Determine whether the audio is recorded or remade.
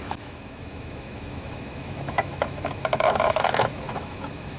remade